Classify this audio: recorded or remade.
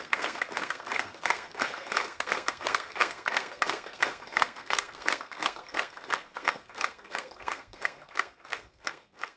remade